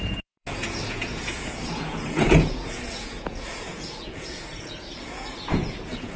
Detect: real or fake fake